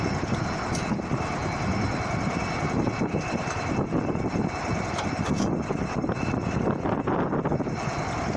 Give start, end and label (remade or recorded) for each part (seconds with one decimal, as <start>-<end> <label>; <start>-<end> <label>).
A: 0.0-8.4 recorded